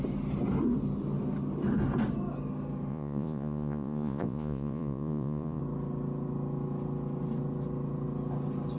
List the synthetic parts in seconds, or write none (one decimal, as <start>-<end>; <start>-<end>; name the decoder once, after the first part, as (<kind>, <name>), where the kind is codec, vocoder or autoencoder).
2.9-5.6 (vocoder, Vocos)